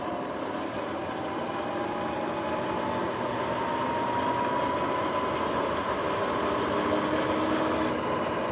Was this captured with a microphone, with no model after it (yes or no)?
yes